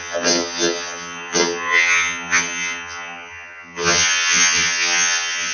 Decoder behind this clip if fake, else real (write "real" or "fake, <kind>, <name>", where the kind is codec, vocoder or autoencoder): fake, vocoder, HiFi-GAN